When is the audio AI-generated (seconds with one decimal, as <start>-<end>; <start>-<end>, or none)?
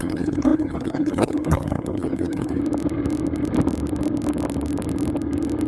0.0-2.6